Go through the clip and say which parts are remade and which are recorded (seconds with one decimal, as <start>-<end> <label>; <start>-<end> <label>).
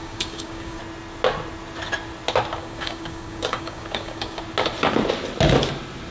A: 0.0-0.8 remade; 0.8-2.6 recorded; 2.6-4.4 remade; 4.4-6.1 recorded